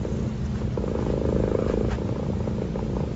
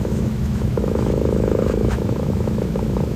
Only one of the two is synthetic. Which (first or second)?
second